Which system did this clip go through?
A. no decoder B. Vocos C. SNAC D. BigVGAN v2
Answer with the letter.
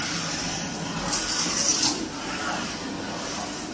A